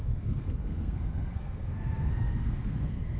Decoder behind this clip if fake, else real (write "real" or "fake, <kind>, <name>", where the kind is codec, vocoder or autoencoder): fake, codec, SNAC